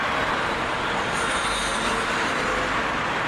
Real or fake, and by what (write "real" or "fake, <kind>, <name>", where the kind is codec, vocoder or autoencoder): fake, vocoder, BigVGAN v2